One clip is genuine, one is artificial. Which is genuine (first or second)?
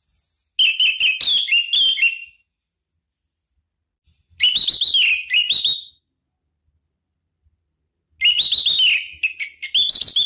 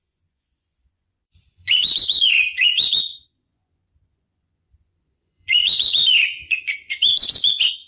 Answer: first